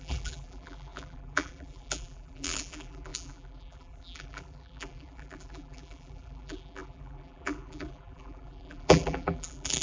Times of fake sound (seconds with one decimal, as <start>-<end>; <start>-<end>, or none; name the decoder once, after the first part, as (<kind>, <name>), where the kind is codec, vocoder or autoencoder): 0.0-9.8 (vocoder, BigVGAN v2)